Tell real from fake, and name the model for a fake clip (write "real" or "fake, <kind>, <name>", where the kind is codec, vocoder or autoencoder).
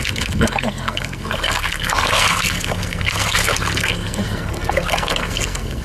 fake, codec, SNAC